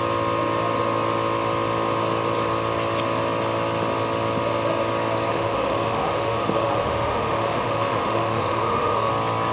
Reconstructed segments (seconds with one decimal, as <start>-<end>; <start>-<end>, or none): 5.3-9.1